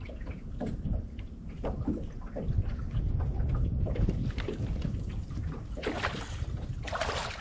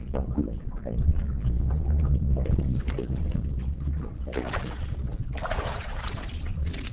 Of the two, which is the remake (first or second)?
second